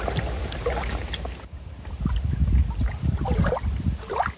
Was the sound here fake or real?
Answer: real